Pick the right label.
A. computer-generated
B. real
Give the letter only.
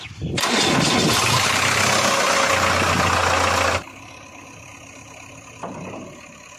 B